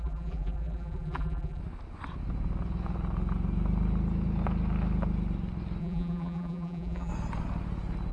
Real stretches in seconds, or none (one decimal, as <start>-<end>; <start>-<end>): 1.6-5.8; 7.1-8.1